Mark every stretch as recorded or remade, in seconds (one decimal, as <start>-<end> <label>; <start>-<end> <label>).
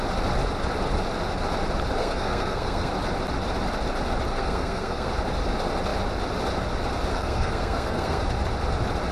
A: 0.0-2.0 recorded; 2.0-2.9 remade; 2.9-4.3 recorded; 4.3-5.1 remade; 5.1-7.1 recorded; 7.1-8.2 remade; 8.2-9.1 recorded